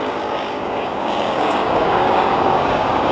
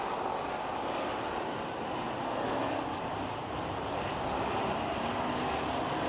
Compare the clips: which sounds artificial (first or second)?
first